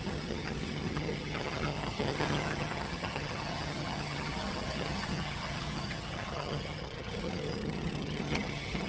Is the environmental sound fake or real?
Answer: fake